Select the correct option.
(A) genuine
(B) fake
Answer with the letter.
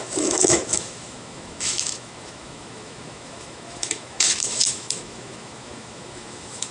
B